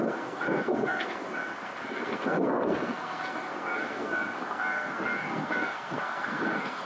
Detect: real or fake fake